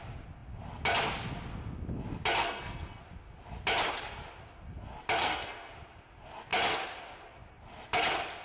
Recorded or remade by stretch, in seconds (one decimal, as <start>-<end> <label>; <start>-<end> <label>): 0.0-2.4 recorded; 2.4-3.0 remade; 3.0-5.2 recorded; 5.2-5.7 remade; 5.7-8.4 recorded